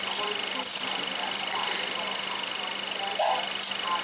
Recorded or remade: recorded